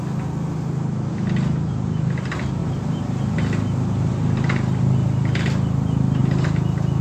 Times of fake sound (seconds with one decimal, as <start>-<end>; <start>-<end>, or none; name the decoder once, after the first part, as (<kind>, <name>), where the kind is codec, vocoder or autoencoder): none